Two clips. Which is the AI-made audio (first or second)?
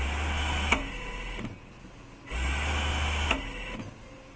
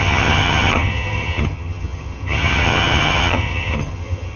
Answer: second